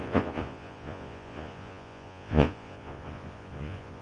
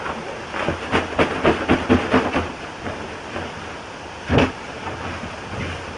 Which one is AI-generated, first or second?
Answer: first